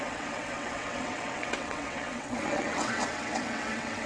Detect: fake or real fake